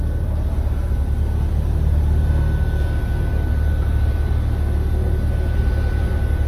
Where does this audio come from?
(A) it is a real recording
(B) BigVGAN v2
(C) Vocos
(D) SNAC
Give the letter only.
A